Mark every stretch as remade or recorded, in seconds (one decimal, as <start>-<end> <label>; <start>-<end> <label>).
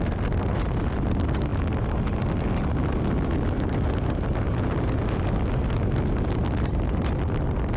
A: 0.0-7.8 recorded